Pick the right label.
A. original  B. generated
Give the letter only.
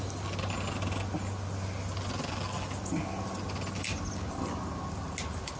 A